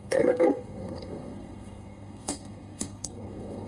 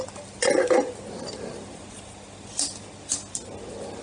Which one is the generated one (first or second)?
first